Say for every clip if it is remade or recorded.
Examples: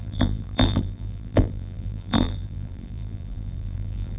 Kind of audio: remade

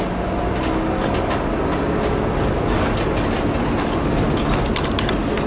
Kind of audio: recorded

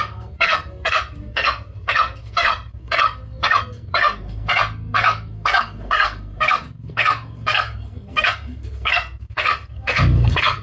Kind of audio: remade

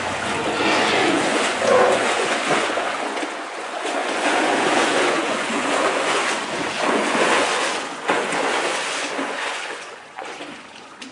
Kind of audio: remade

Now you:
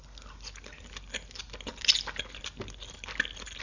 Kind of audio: recorded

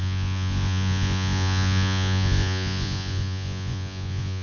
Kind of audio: remade